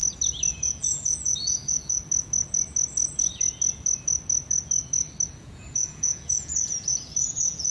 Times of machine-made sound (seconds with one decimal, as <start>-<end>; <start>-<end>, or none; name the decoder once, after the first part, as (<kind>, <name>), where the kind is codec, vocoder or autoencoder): 0.5-2.0 (vocoder, Vocos); 5.4-7.7